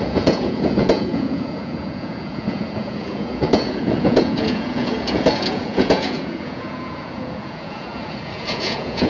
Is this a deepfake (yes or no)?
yes